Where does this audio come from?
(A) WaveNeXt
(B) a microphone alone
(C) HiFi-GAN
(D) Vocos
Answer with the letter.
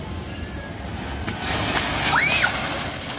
B